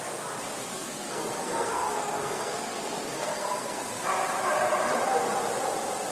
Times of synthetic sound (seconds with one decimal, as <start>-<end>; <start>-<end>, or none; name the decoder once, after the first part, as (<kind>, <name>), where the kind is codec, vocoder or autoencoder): 0.7-3.9 (codec, SNAC)